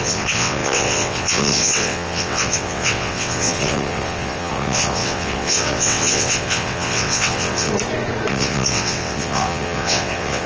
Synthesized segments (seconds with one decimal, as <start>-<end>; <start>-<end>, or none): 0.0-7.7; 8.3-10.5